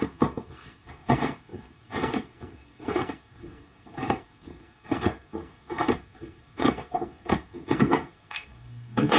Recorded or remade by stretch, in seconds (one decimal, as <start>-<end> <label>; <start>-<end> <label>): 0.0-9.2 remade